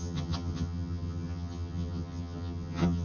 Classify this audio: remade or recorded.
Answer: remade